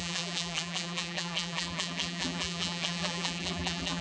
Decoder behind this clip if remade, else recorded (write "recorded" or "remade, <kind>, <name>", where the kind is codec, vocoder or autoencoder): remade, vocoder, BigVGAN v2